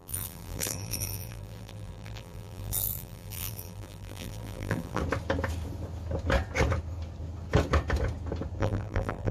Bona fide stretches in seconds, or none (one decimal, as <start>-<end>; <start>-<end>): 5.0-8.6